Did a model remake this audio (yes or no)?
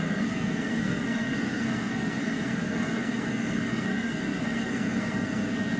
yes